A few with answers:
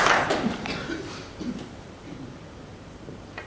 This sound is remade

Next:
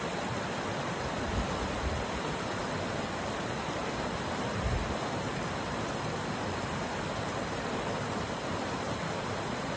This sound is recorded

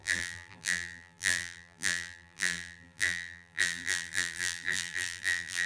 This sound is remade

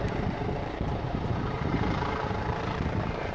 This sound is remade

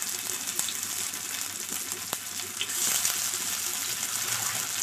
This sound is recorded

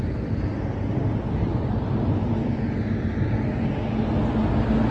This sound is recorded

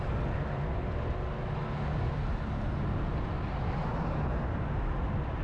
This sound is recorded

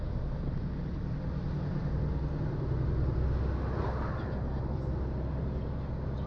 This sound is recorded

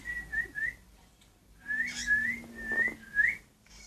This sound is remade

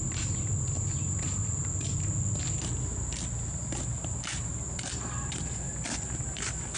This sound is recorded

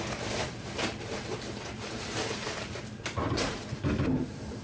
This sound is remade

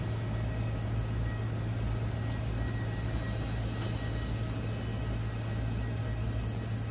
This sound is recorded